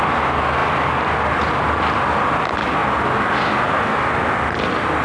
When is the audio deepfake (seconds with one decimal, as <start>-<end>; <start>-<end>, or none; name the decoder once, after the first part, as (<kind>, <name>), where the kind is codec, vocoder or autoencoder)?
0.6-1.4 (vocoder, BigVGAN v2)